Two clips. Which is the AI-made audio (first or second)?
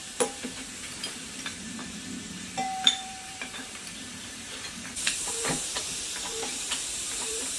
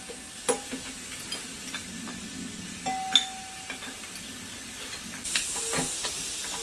first